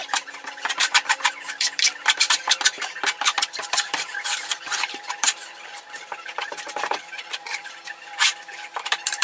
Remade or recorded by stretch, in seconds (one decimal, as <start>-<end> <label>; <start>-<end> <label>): 0.0-9.2 remade